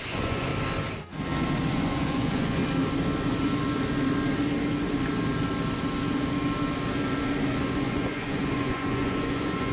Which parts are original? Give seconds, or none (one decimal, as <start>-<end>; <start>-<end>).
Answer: 0.5-1.7; 2.6-7.6